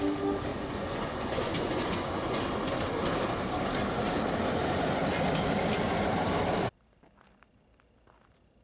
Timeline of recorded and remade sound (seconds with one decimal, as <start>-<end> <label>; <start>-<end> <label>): 0.0-0.5 recorded; 0.5-2.4 remade; 2.4-8.6 recorded